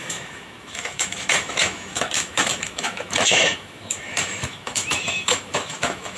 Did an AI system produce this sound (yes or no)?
yes